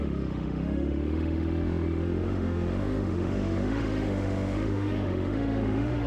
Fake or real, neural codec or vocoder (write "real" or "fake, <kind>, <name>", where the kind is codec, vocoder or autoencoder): fake, autoencoder, DAC-VAE